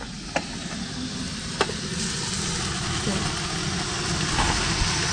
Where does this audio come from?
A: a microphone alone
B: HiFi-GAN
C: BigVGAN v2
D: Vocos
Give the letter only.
A